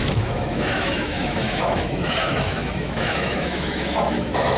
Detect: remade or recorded remade